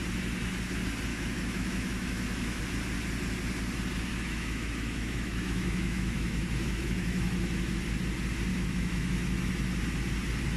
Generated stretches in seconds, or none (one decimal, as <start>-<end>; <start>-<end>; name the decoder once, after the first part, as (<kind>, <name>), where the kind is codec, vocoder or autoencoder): 1.1-2.6 (autoencoder, DAC-VAE); 4.1-7.8; 8.5-9.5